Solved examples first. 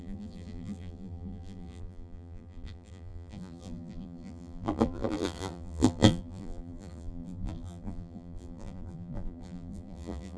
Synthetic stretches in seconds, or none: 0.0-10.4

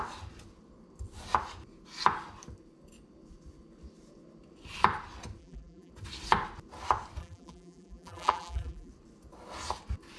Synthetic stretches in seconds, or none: 5.4-5.9; 7.2-8.9

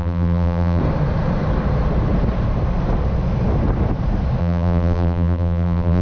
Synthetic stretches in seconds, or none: 0.0-0.8; 4.4-6.0

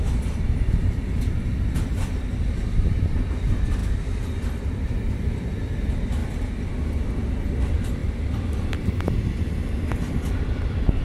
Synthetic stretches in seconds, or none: 8.0-8.9

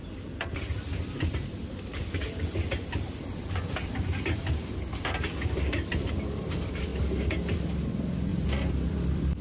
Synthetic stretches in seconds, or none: 0.0-6.9; 7.9-9.4

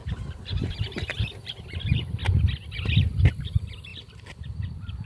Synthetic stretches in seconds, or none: 0.0-2.2; 3.4-3.9; 4.4-5.1

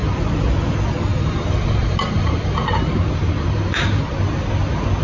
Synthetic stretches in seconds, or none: 0.0-0.5; 1.1-4.1